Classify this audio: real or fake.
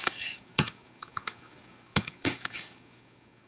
fake